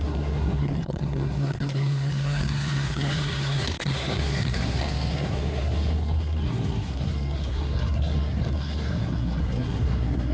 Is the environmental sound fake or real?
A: fake